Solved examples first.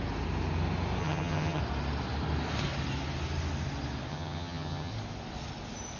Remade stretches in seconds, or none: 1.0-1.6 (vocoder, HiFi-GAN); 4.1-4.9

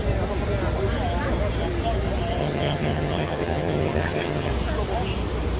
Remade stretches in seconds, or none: 2.4-4.5 (vocoder, HiFi-GAN)

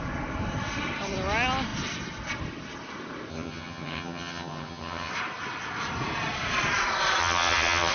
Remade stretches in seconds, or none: 3.3-5.1 (vocoder, HiFi-GAN); 7.2-7.9

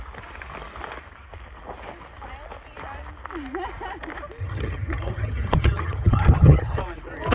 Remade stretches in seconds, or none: 4.4-6.8 (vocoder, HiFi-GAN)

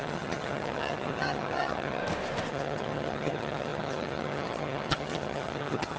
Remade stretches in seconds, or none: 0.0-2.0 (vocoder, HiFi-GAN); 2.5-6.0

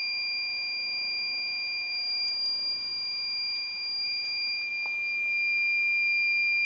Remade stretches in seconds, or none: none

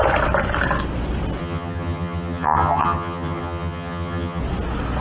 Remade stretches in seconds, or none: 1.4-4.4 (vocoder, HiFi-GAN)